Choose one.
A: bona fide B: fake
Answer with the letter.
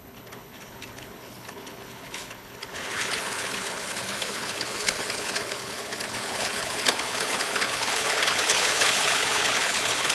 B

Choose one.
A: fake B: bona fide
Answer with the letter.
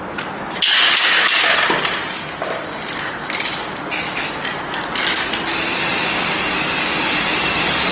B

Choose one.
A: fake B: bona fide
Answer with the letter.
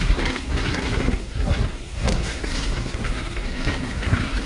A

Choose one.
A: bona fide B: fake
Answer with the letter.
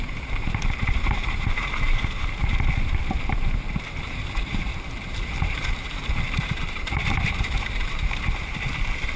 B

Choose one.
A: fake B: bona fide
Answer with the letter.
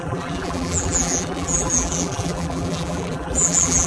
A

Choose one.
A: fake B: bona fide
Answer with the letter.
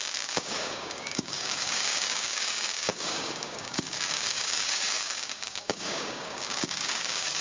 A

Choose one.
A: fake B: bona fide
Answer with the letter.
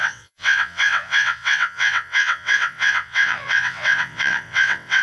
A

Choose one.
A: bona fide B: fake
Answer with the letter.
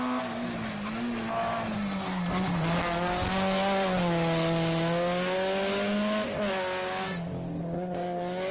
A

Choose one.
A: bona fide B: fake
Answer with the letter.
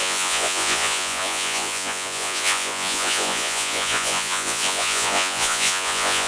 B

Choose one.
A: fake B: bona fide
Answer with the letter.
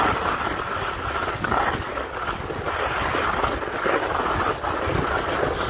B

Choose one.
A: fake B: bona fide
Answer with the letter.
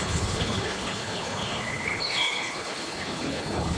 A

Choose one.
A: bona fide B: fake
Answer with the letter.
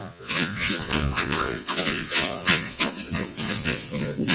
B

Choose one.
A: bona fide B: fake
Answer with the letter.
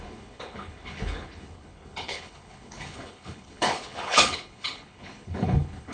B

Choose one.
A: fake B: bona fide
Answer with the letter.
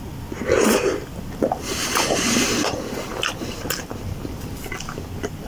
B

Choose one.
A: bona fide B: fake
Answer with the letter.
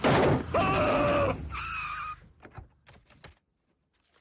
A